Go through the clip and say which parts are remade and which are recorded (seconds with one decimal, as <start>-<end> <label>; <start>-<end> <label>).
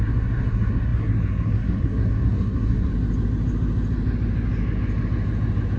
0.0-2.9 remade; 2.9-5.8 recorded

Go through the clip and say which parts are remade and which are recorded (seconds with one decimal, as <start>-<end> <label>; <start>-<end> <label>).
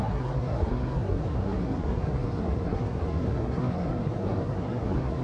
0.0-5.2 remade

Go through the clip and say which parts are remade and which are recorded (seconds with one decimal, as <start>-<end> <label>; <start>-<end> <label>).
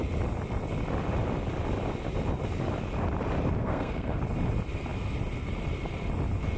0.0-3.6 recorded; 3.6-4.2 remade; 4.2-6.6 recorded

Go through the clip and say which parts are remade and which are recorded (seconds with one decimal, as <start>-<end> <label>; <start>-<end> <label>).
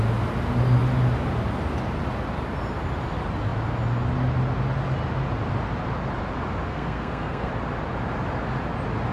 0.0-6.7 recorded; 6.7-7.5 remade; 7.5-9.1 recorded